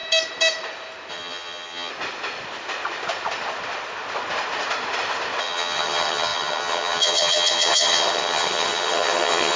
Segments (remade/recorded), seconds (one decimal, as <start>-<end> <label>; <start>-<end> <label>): 0.0-1.1 recorded; 1.1-1.9 remade; 1.9-5.4 recorded; 5.4-9.6 remade

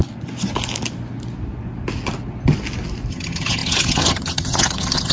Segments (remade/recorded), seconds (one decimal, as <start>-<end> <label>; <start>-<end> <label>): 0.0-3.1 recorded; 3.1-5.1 remade

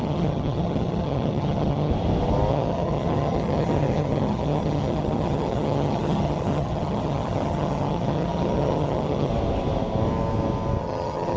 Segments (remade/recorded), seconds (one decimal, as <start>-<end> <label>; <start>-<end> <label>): 0.0-1.9 remade; 1.9-2.5 recorded; 2.5-9.3 remade; 9.3-10.8 recorded; 10.8-11.4 remade

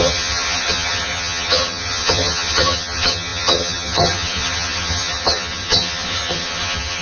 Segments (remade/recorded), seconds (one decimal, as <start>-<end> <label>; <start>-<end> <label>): 0.0-7.0 remade

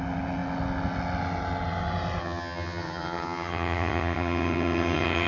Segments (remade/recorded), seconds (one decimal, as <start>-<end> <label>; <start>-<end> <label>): 0.0-2.2 recorded; 2.2-5.3 remade

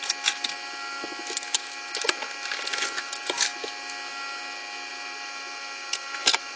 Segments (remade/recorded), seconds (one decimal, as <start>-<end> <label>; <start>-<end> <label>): 0.0-6.6 recorded